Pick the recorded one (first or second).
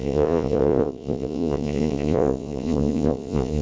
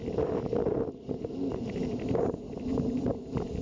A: second